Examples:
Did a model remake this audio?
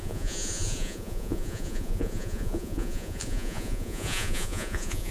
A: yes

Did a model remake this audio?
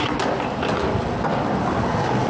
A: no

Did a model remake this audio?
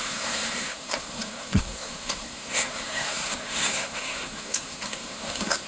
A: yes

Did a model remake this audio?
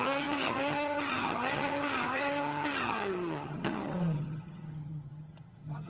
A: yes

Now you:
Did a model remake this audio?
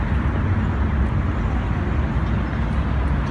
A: no